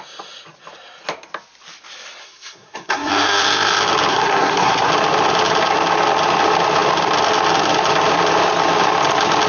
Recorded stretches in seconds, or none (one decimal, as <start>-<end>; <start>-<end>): 0.0-2.2; 3.1-4.1; 4.9-9.5